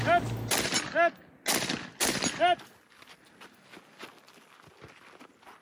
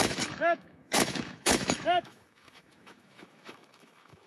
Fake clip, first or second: second